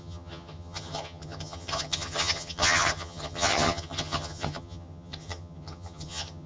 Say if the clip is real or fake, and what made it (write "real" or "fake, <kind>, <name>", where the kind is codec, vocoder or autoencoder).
fake, vocoder, HiFi-GAN